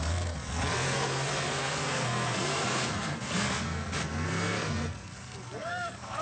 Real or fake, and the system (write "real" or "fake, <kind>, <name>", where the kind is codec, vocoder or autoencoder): fake, codec, SNAC